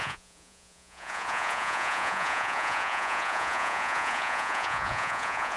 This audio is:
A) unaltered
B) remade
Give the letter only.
B